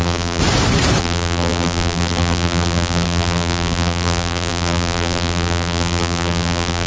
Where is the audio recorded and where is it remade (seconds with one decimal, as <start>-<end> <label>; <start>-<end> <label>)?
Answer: 0.0-0.4 remade; 0.4-1.0 recorded; 1.0-6.9 remade